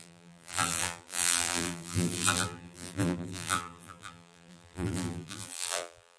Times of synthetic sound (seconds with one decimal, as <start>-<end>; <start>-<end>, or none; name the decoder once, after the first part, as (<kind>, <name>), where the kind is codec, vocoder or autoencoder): 0.0-6.2 (vocoder, BigVGAN v2)